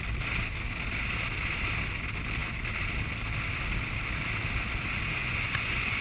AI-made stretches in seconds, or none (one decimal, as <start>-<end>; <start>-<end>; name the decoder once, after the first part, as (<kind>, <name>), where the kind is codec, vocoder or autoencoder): 5.2-6.0 (vocoder, Vocos)